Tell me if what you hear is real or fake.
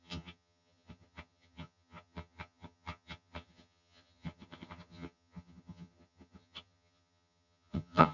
fake